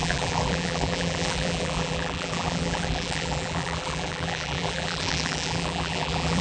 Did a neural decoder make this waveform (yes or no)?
yes